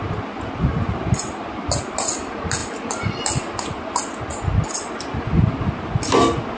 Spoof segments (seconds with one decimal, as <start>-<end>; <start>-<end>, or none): none